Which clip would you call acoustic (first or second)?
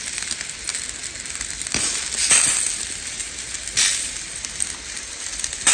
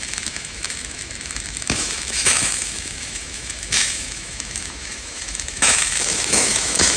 first